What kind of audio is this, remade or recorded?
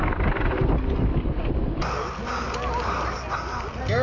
recorded